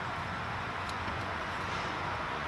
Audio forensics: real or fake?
fake